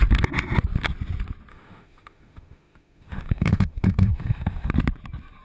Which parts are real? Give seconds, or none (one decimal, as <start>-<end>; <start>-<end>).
0.0-1.5; 4.7-5.4

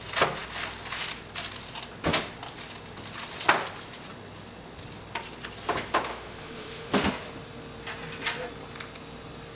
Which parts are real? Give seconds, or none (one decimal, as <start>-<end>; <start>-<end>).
0.0-6.1; 7.1-9.6